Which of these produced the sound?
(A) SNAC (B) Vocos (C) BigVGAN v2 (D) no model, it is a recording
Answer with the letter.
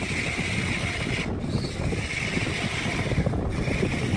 D